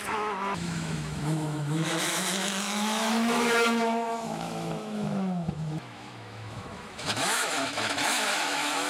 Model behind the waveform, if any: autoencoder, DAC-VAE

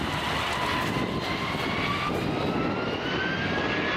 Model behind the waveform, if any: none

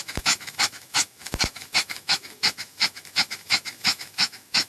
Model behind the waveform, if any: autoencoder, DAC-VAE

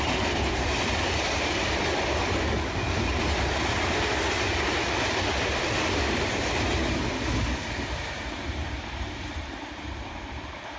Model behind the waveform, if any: none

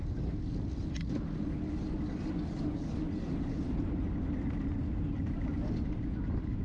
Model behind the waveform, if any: none